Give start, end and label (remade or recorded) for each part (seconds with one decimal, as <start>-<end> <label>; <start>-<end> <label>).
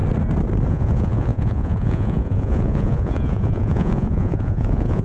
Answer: 0.0-0.7 recorded; 0.7-5.0 remade